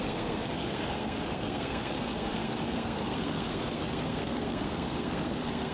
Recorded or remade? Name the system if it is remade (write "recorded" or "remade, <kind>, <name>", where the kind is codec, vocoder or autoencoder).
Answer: remade, codec, SNAC